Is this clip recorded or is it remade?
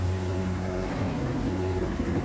remade